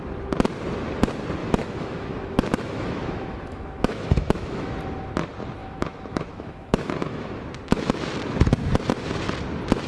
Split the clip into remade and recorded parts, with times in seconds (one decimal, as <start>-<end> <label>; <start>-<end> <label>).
0.0-1.4 recorded; 1.4-4.7 remade; 4.7-5.6 recorded; 5.6-7.4 remade; 7.4-9.9 recorded

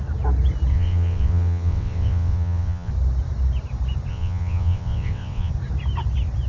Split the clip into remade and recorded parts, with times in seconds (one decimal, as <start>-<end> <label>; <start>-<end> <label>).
0.0-0.7 recorded; 0.7-2.9 remade; 2.9-4.1 recorded; 4.1-5.5 remade; 5.5-6.5 recorded

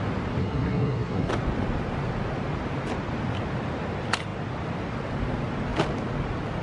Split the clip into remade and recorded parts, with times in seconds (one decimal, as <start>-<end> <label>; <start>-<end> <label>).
0.0-0.4 recorded; 0.4-1.3 remade; 1.3-6.6 recorded

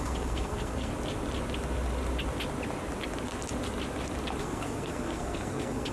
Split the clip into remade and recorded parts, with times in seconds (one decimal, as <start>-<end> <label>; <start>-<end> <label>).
0.0-0.9 remade; 0.9-4.4 recorded; 4.4-5.9 remade

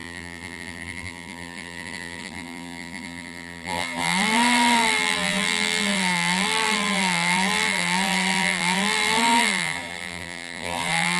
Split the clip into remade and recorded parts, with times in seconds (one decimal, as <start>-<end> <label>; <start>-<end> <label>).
0.0-11.2 remade

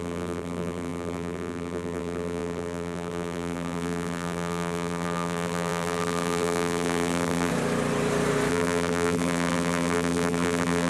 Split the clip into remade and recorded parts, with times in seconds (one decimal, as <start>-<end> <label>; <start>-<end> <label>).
0.0-7.5 remade; 7.5-8.5 recorded; 8.5-10.9 remade

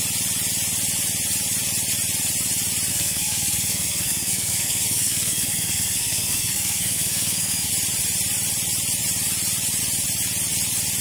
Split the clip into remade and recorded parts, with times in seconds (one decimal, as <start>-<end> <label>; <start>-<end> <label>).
0.0-2.9 recorded; 2.9-7.7 remade; 7.7-11.0 recorded

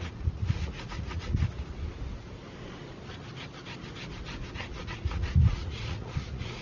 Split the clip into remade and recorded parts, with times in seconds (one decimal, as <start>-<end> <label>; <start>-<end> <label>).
0.0-1.8 remade; 1.8-4.8 recorded; 4.8-6.6 remade